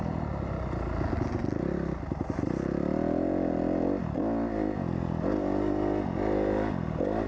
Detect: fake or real real